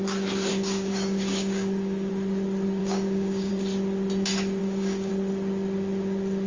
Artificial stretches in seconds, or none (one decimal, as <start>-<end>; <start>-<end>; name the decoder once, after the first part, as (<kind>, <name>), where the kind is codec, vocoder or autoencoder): 0.5-2.1 (codec, DAC); 2.8-3.5; 4.6-5.1